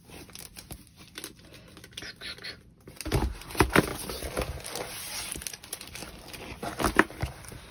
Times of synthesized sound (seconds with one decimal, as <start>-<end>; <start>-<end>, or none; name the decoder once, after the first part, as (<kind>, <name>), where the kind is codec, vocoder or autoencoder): 0.0-0.5 (vocoder, BigVGAN v2); 3.1-3.9; 5.5-6.0; 6.9-7.7